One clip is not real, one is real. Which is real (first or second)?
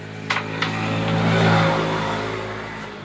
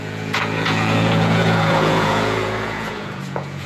first